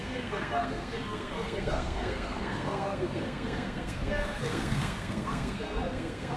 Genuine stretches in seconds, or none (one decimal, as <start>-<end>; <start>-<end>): none